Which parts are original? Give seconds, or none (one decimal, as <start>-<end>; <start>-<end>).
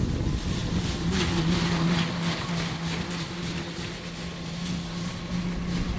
0.0-6.0